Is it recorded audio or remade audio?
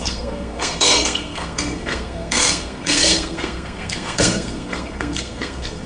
remade